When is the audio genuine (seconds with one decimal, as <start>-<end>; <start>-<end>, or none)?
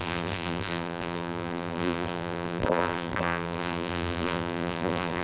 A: none